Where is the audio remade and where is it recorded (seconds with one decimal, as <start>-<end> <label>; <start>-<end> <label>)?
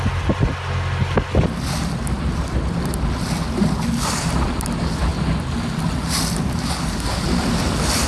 0.0-8.1 recorded